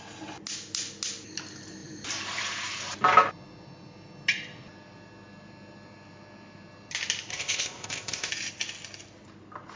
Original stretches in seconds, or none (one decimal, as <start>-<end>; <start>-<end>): 0.0-7.3; 8.3-9.8